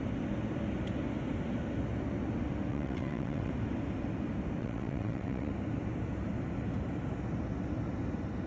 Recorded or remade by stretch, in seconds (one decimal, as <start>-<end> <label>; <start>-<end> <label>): 0.0-2.7 recorded; 2.7-3.5 remade; 3.5-4.6 recorded; 4.6-5.5 remade; 5.5-8.5 recorded